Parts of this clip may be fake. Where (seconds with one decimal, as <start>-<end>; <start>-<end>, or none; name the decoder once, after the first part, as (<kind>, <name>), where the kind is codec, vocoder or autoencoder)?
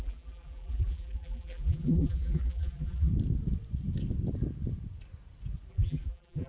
0.0-3.1 (vocoder, BigVGAN v2); 5.7-6.5